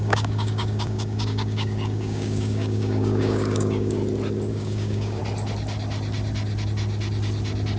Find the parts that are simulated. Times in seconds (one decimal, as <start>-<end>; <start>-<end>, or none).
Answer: 0.0-4.0; 4.5-5.2